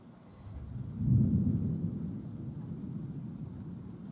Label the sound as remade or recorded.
recorded